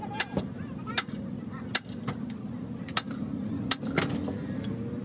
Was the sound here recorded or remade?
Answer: recorded